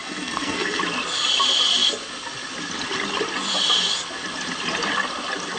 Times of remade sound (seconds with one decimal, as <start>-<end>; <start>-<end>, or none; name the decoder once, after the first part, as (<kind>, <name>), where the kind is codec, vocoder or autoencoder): 0.0-0.8 (codec, SNAC)

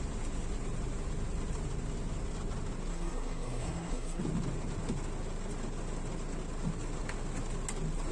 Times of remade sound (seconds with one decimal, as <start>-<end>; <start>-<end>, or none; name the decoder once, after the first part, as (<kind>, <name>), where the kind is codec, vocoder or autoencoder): 2.9-4.2 (codec, SNAC)

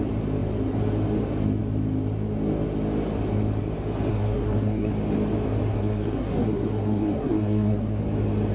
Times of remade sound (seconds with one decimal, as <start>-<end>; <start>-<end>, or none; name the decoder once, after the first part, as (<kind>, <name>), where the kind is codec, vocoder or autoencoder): 4.1-4.9 (codec, SNAC); 5.7-8.0

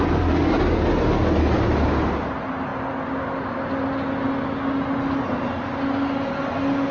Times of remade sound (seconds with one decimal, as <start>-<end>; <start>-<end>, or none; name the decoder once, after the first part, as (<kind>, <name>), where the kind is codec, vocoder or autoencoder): none

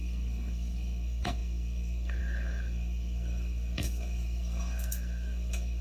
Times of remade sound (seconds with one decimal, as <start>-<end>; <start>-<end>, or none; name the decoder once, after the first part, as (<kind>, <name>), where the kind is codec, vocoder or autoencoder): 0.0-5.8 (codec, SNAC)

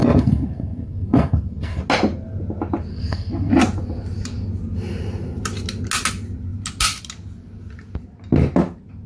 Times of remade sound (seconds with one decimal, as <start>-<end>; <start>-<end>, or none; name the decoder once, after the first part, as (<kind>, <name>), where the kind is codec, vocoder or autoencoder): 0.0-1.8 (codec, SNAC); 2.9-3.5